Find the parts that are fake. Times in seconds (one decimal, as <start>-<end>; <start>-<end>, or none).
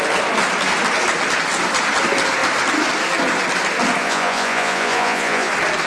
4.0-5.5